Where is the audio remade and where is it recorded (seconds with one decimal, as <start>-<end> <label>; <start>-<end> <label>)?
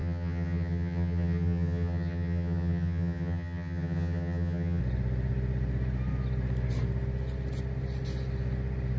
0.0-4.8 remade; 4.8-9.0 recorded